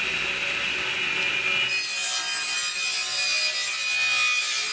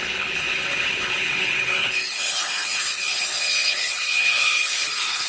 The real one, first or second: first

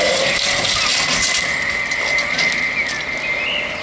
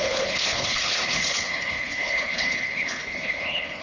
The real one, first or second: first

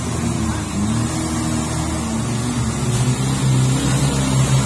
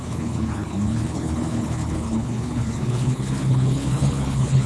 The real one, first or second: first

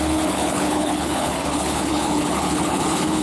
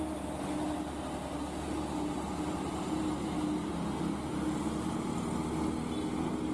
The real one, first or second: second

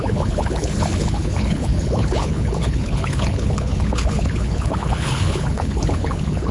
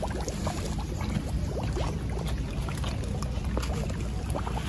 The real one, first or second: second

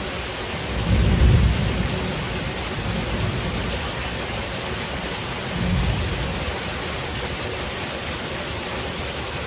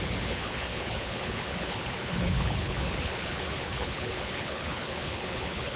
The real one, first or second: first